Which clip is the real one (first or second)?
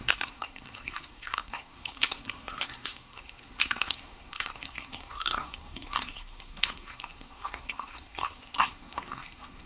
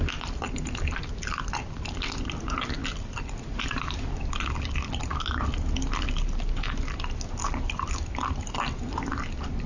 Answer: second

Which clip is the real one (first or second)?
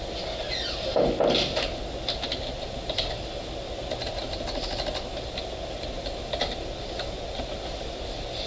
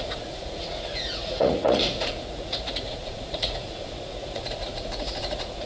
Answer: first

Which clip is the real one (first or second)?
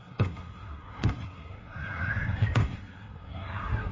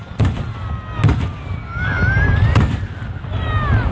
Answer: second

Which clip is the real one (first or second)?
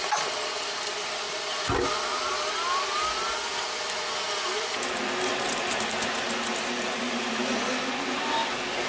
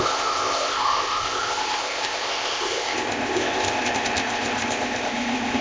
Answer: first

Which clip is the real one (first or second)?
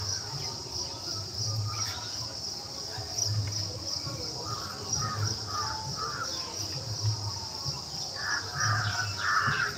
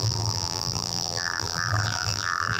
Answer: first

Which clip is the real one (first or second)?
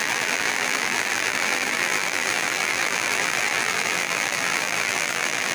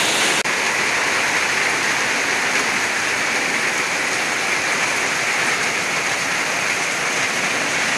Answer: second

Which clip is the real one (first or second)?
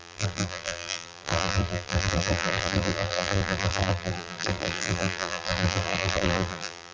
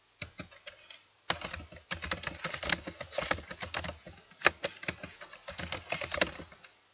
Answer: second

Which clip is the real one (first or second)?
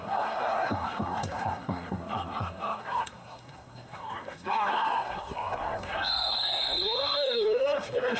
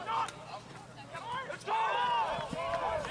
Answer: second